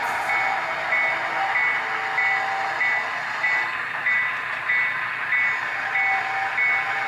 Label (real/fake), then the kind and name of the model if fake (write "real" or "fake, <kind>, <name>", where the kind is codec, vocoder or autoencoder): real